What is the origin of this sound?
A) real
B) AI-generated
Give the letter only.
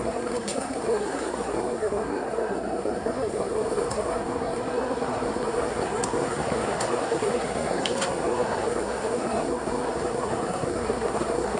B